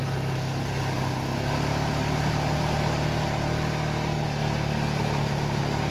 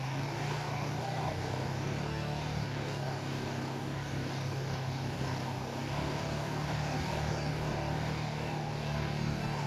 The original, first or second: first